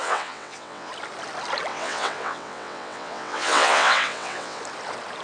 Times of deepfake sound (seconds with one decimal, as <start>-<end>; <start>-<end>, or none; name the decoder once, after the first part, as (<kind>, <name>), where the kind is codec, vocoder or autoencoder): 0.0-0.9 (vocoder, WaveNeXt); 1.7-4.6